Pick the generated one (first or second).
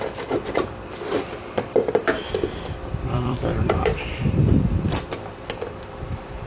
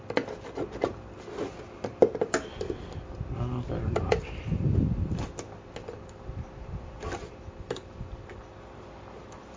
first